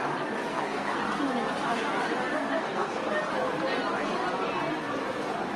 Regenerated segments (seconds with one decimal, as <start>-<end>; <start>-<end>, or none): 0.5-1.0; 2.3-3.1